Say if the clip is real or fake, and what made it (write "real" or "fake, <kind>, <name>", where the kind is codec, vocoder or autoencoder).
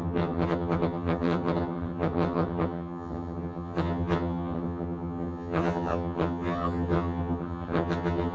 fake, vocoder, HiFi-GAN